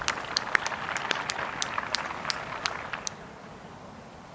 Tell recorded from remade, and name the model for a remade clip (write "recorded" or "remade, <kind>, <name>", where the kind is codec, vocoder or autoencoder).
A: recorded